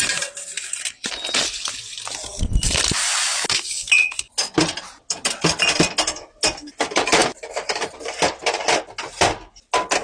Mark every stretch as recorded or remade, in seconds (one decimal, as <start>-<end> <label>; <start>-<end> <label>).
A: 0.0-10.0 recorded